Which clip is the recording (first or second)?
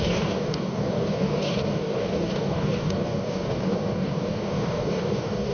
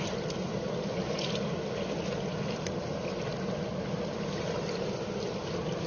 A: second